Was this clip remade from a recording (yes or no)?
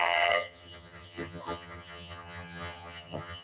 yes